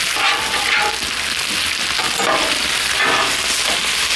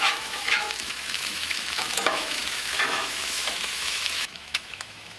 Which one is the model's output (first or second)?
second